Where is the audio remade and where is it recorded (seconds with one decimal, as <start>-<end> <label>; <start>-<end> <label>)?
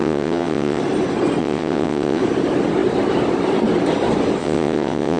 0.0-0.8 remade; 0.8-1.4 recorded; 1.4-2.2 remade; 2.2-4.4 recorded; 4.4-5.2 remade